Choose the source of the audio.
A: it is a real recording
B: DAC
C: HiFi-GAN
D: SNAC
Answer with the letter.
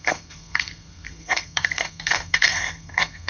D